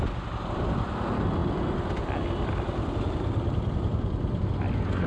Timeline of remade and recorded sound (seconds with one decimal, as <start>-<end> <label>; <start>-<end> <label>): 0.0-5.1 recorded